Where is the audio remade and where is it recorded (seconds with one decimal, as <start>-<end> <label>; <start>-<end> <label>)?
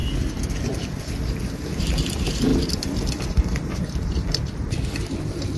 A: 0.0-2.5 recorded; 2.5-5.0 remade; 5.0-5.6 recorded